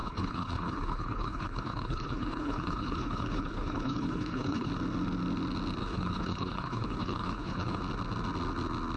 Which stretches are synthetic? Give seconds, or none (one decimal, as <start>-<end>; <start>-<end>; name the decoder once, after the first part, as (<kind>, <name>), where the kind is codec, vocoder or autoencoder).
0.0-4.7 (codec, HILCodec); 5.8-7.8